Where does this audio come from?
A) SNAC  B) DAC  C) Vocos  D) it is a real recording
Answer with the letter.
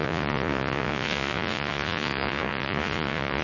C